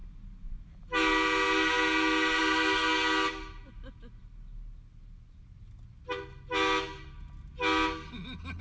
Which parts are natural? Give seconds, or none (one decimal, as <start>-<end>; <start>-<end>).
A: 0.0-8.6

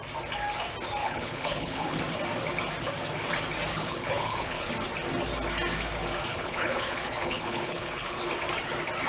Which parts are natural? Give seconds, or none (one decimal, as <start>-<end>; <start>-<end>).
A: 0.0-1.0; 2.0-3.7; 4.7-6.3; 8.2-9.1

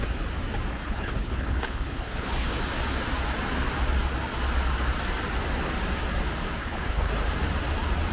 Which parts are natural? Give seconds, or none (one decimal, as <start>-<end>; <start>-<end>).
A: 0.0-0.7; 2.6-6.6; 7.1-8.1